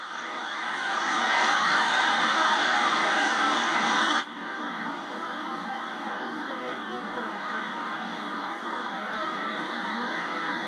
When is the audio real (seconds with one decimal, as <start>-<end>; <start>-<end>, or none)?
none